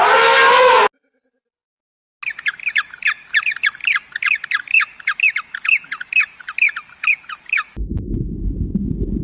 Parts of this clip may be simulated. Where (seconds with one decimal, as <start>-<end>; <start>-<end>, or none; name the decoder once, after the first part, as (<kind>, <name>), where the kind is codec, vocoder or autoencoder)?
none